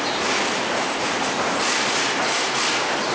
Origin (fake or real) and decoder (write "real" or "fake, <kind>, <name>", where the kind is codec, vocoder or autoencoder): real